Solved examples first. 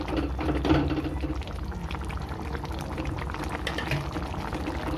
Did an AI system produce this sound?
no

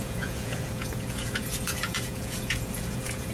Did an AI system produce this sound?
yes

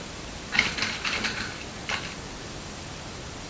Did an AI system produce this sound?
yes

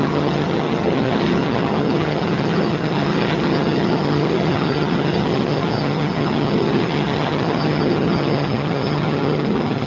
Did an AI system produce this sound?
yes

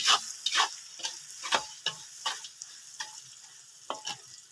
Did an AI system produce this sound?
no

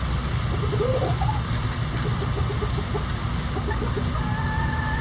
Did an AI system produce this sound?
no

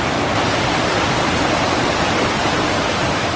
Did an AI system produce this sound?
yes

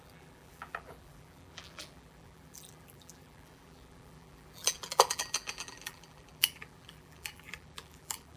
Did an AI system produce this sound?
yes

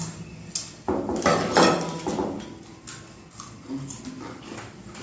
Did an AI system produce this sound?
no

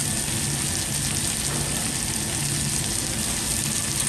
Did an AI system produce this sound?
no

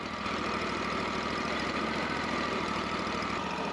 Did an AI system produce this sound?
yes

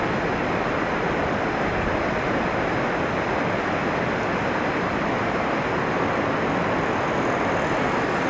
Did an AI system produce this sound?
no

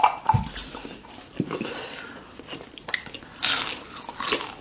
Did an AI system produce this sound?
no